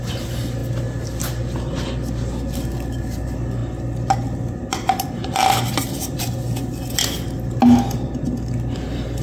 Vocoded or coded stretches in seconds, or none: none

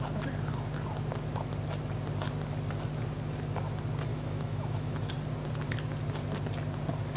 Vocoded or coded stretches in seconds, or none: 4.1-5.1

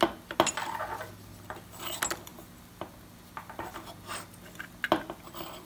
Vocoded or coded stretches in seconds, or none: none

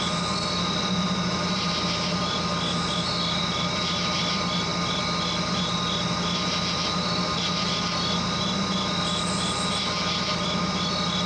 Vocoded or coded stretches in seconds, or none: none